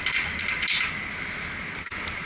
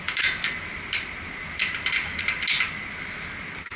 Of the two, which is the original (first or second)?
first